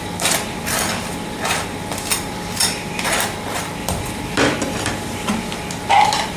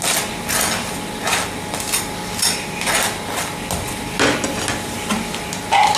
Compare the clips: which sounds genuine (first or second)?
second